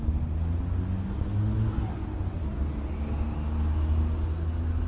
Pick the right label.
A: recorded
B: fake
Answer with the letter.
A